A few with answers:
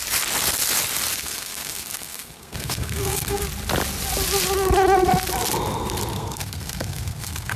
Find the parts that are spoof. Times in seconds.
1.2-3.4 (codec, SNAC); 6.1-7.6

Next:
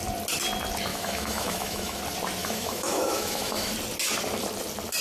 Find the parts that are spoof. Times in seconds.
0.9-2.0 (autoencoder, DAC-VAE); 2.4-3.7

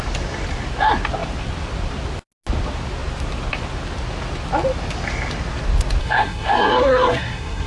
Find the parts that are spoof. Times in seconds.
6.0-7.7 (codec, SNAC)

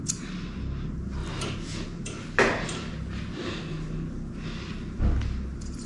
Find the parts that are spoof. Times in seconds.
none

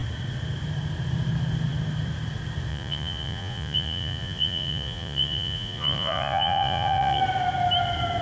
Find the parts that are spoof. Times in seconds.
2.7-7.2 (vocoder, Vocos)

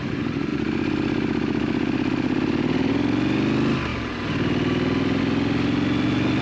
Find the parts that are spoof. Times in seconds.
none

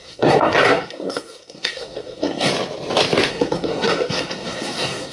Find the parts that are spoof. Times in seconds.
0.0-2.5 (codec, SNAC); 3.3-5.1